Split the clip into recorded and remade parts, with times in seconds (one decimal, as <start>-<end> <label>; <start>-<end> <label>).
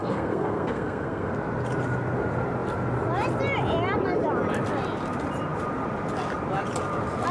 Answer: 0.0-1.3 remade; 1.3-7.3 recorded